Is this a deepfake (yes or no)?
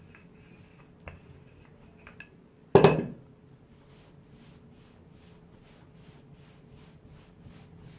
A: no